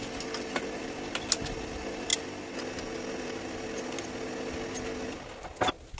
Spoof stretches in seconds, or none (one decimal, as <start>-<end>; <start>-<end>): none